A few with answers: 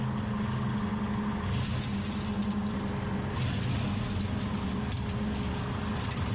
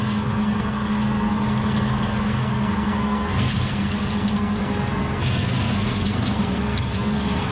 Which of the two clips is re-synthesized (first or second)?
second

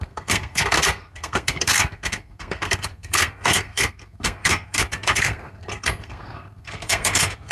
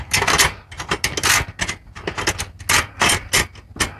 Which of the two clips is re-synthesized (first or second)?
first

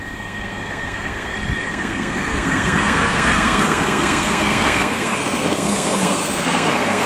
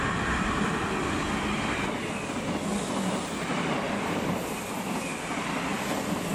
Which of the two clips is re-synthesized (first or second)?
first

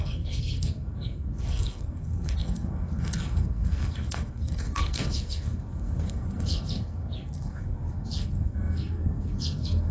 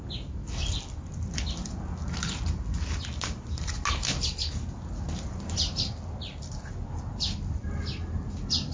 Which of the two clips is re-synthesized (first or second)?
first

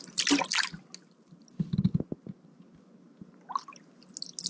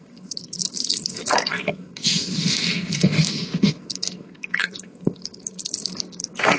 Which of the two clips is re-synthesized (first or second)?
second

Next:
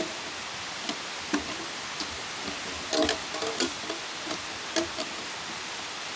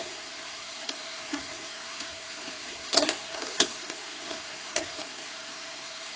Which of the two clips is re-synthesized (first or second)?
second